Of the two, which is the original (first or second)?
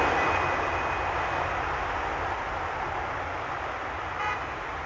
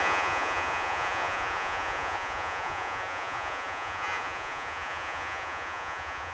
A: first